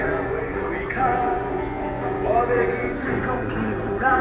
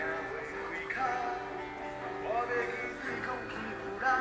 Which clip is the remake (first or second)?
first